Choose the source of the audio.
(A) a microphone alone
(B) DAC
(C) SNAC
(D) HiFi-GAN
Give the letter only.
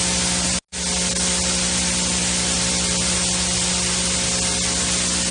A